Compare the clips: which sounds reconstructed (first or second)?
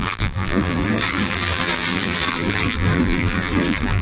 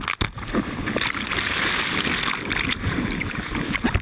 first